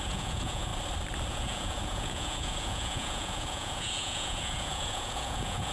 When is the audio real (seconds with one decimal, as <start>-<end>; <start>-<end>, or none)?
0.7-1.3